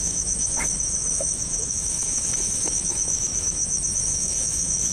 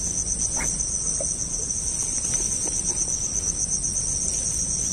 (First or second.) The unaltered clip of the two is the second